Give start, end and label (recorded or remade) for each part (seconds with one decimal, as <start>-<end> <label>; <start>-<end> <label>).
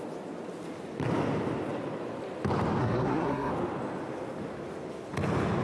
0.0-2.8 recorded; 2.8-3.5 remade; 3.5-5.6 recorded